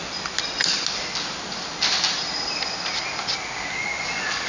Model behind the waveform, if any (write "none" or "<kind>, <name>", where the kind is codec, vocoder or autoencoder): none